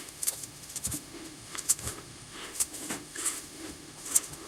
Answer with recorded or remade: remade